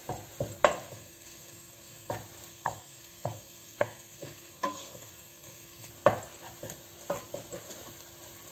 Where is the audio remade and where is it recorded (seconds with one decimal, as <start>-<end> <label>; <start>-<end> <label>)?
0.0-0.9 recorded; 0.9-2.1 remade; 2.1-2.5 recorded; 2.5-5.9 remade; 5.9-8.5 recorded